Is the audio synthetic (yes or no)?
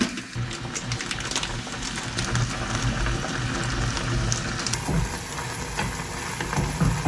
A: no